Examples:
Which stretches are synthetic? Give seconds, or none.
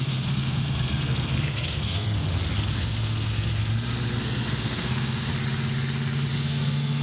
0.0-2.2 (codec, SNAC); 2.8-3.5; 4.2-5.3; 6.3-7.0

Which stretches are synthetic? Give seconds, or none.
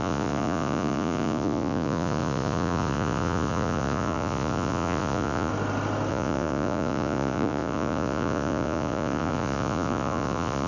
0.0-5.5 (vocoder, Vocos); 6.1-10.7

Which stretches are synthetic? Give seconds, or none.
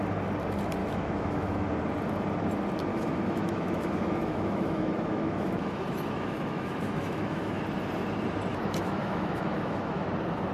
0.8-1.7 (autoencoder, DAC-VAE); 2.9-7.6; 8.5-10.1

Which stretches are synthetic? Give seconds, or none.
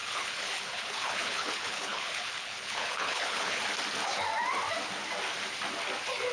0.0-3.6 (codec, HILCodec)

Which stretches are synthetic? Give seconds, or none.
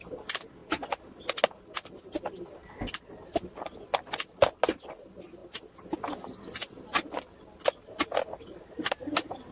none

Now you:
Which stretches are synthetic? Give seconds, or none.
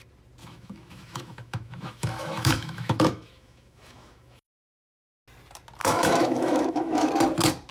0.4-5.0 (autoencoder, DAC-VAE); 5.8-7.1